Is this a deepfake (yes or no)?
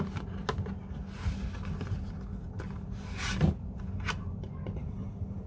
no